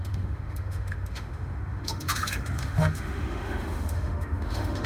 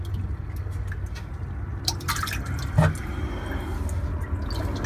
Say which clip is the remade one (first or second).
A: first